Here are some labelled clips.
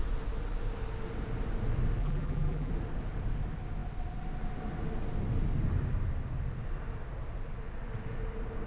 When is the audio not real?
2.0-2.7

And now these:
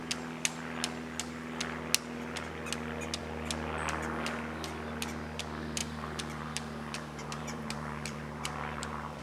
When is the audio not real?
5.8-9.2

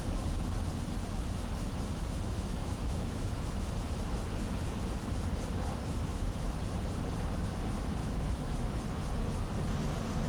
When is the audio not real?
2.6-3.7; 5.8-6.6; 8.0-8.8

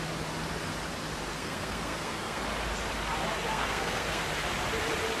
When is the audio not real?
1.3-2.4; 3.5-4.2

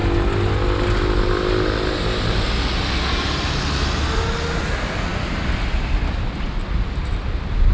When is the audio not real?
none

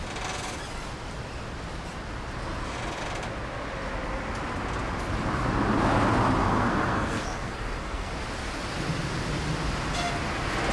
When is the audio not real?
6.4-8.1

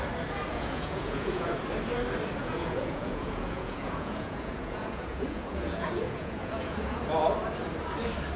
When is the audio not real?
0.5-1.6; 2.4-7.0